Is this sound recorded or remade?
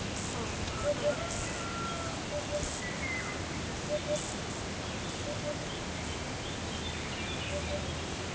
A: recorded